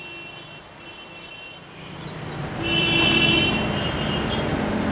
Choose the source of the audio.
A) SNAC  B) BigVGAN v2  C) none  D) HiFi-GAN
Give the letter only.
C